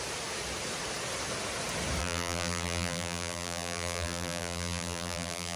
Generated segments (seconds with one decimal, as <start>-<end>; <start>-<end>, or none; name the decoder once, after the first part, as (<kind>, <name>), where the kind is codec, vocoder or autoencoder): 2.0-5.6 (vocoder, BigVGAN v2)